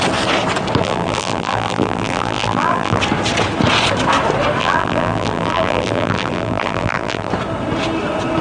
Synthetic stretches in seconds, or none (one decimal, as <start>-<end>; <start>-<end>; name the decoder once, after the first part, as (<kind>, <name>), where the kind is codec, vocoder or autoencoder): 0.8-3.0 (vocoder, BigVGAN v2); 4.6-7.3